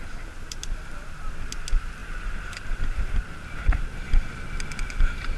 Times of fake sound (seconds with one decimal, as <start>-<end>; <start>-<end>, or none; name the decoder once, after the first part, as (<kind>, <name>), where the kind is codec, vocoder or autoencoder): none